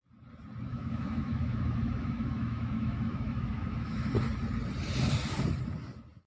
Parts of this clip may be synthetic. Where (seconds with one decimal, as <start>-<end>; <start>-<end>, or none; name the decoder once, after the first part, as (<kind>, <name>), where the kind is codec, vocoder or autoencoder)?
0.7-4.1 (autoencoder, DAC-VAE)